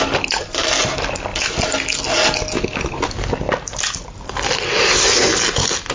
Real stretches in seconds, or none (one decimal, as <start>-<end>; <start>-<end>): 0.0-5.9